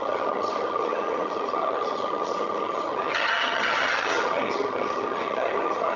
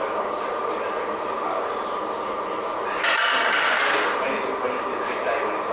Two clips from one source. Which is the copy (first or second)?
first